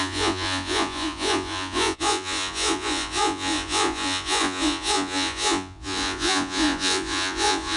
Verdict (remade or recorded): remade